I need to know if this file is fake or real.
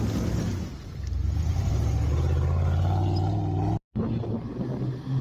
real